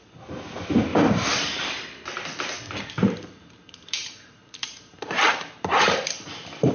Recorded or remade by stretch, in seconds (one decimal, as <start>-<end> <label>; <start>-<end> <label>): 0.0-0.9 recorded; 0.9-1.7 remade; 1.7-3.0 recorded; 3.0-6.7 remade